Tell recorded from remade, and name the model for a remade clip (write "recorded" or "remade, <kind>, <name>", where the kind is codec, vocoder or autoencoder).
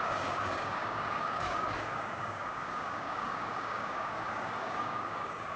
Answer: remade, codec, DAC